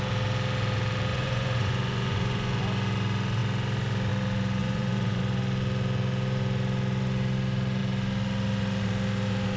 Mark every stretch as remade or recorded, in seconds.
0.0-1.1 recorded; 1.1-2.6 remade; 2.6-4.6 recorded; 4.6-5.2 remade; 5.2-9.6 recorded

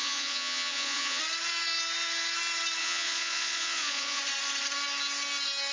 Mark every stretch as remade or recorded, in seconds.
0.0-1.2 remade; 1.2-2.8 recorded; 2.8-4.2 remade; 4.2-5.7 recorded

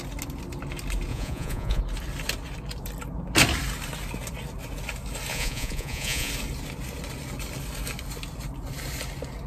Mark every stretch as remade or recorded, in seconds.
0.0-1.1 recorded; 1.1-1.8 remade; 1.8-5.3 recorded; 5.3-6.3 remade; 6.3-9.5 recorded

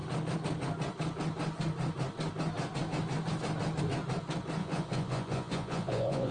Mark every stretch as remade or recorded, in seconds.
0.0-4.6 recorded; 4.6-6.3 remade

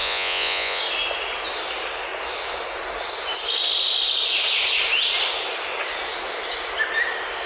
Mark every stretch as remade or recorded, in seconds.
0.0-0.8 remade; 0.8-7.5 recorded